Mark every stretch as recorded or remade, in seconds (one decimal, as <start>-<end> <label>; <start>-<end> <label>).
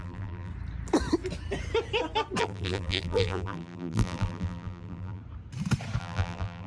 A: 0.0-0.5 remade; 0.5-2.4 recorded; 2.4-5.2 remade; 5.2-6.0 recorded; 6.0-6.7 remade